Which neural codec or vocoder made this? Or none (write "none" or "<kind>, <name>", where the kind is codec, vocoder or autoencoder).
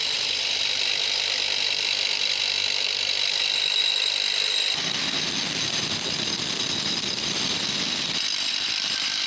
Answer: vocoder, BigVGAN v2